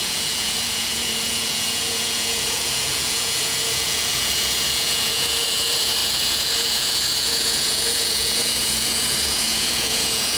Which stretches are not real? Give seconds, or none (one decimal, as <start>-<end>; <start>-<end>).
0.0-10.4